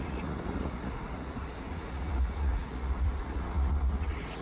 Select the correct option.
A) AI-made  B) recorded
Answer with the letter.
A